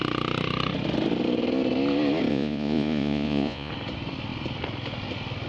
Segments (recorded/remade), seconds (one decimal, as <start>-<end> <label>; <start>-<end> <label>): 0.0-2.3 recorded; 2.3-3.7 remade; 3.7-5.5 recorded